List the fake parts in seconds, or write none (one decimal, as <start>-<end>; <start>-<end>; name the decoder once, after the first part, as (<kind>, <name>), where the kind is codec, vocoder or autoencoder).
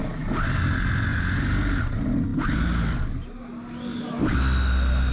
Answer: none